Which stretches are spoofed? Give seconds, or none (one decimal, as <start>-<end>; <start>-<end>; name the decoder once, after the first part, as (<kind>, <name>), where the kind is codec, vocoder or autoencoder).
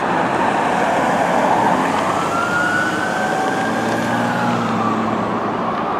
none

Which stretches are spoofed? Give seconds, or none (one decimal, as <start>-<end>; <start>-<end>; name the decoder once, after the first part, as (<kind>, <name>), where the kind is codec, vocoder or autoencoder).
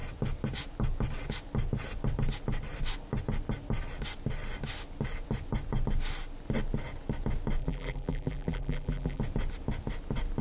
7.6-9.2 (vocoder, BigVGAN v2)